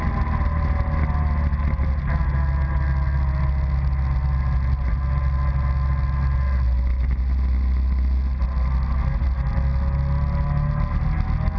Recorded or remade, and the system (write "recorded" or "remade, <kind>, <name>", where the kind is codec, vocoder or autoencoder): recorded